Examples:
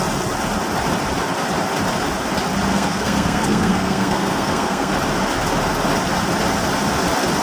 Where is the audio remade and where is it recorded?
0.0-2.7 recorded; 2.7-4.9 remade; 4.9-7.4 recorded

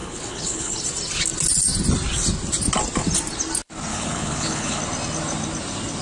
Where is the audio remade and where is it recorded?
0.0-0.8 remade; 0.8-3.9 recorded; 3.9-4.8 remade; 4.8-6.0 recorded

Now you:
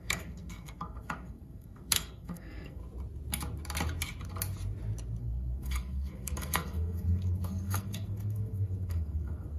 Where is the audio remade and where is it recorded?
0.0-2.8 remade; 2.8-5.2 recorded; 5.2-9.6 remade

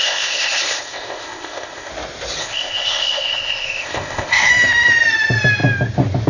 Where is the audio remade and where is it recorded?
0.0-1.9 remade; 1.9-2.4 recorded; 2.4-4.5 remade; 4.5-6.3 recorded

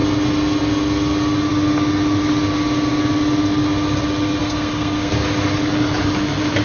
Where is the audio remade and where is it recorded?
0.0-4.4 recorded; 4.4-5.1 remade; 5.1-6.6 recorded

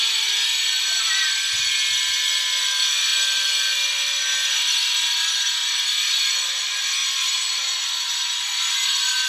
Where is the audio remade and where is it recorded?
0.0-9.3 recorded